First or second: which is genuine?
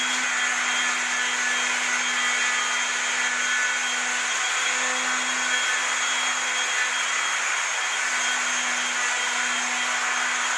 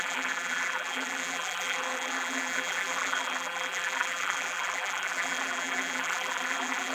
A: first